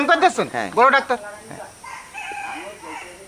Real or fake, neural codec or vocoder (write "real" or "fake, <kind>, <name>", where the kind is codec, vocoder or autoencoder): real